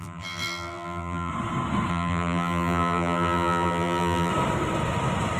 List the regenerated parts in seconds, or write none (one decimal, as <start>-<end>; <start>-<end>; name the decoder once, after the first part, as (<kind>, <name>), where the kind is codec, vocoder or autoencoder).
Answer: 0.0-1.3 (vocoder, BigVGAN v2); 1.9-4.3

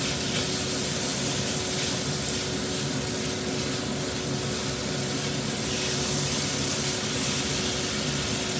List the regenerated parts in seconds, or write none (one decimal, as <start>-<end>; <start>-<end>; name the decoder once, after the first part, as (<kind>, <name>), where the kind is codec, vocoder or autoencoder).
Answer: none

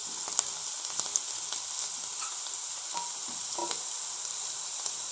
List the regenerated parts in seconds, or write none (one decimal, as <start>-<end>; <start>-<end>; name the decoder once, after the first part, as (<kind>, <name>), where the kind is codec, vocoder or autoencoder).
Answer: 1.9-3.6 (vocoder, BigVGAN v2); 4.1-5.1

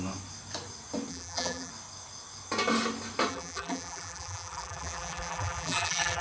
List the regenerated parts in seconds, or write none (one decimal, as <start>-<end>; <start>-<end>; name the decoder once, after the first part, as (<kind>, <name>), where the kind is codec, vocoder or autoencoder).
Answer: 1.1-1.7 (vocoder, BigVGAN v2); 3.3-6.2

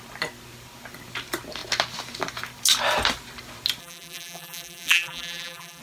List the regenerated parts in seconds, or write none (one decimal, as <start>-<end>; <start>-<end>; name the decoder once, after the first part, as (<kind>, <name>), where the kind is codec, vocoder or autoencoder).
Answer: 3.8-5.8 (vocoder, BigVGAN v2)

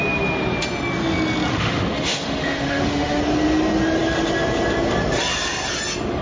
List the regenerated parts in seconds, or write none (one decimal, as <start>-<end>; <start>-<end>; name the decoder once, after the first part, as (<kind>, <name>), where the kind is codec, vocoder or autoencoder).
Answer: 1.5-3.2 (autoencoder, DAC-VAE)